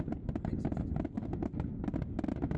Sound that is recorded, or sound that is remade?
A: recorded